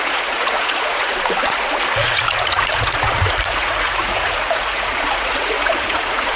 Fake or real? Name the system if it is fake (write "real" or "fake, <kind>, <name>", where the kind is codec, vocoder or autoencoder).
fake, vocoder, Vocos